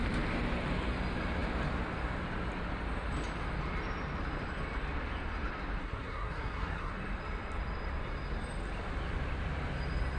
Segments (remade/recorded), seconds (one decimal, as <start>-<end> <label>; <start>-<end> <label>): 0.0-5.8 recorded; 5.8-6.9 remade; 6.9-10.2 recorded